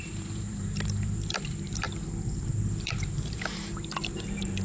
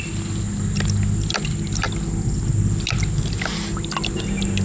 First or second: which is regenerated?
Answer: first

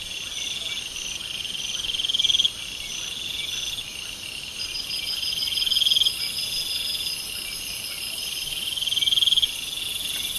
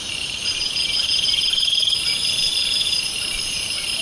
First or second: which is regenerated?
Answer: second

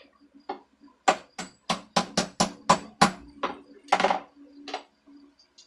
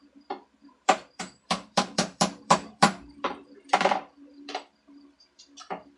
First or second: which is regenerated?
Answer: second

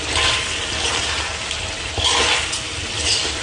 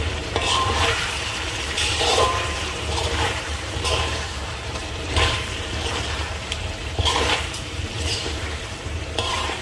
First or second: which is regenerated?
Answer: second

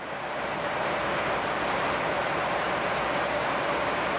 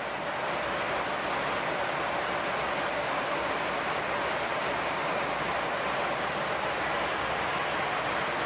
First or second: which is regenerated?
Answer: first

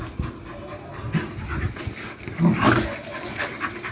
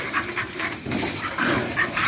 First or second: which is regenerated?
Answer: second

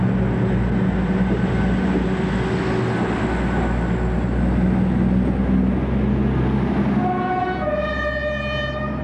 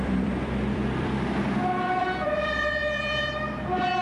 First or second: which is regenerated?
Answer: second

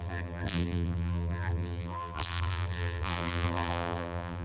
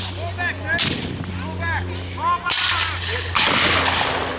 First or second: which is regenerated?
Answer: first